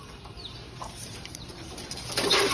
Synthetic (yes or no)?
yes